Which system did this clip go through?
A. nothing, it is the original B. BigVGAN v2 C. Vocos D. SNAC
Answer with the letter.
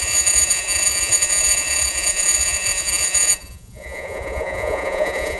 C